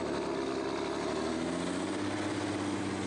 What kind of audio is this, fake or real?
real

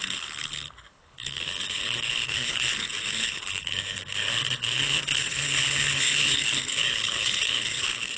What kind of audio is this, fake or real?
fake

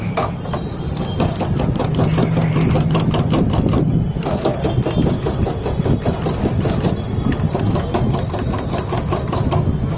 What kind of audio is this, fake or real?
real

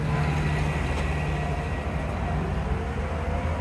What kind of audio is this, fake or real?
real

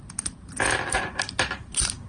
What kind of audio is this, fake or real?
real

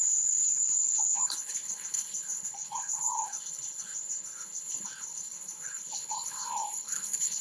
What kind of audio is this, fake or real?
fake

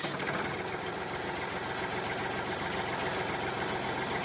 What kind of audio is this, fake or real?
real